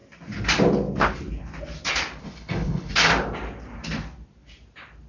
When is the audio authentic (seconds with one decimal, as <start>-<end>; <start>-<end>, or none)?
0.0-2.2; 2.9-5.1